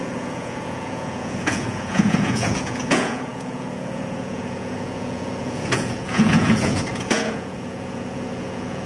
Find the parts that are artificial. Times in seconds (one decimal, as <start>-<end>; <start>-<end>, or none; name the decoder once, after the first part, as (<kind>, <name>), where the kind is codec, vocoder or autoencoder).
0.0-8.9 (vocoder, Vocos)